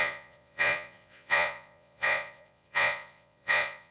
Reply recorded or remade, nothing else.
remade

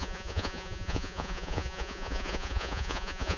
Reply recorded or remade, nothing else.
remade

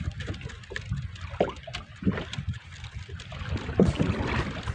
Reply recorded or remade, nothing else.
recorded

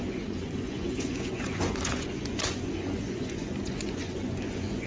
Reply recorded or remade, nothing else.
remade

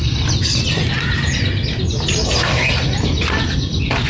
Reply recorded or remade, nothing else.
recorded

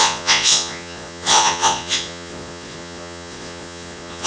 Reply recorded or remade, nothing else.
remade